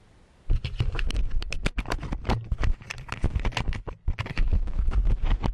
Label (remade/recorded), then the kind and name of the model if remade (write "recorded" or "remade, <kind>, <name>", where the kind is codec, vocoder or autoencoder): recorded